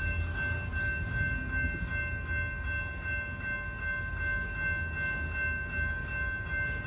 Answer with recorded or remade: recorded